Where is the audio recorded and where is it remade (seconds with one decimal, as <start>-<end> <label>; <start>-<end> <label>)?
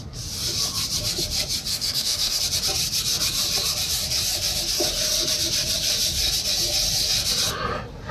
0.0-1.7 recorded; 1.7-2.4 remade; 2.4-8.1 recorded